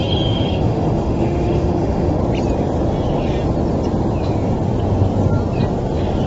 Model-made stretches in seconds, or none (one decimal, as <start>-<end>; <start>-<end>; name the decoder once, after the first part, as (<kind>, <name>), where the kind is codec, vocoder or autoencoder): 0.0-2.2 (autoencoder, DAC-VAE)